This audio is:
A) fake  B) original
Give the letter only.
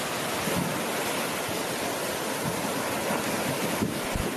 B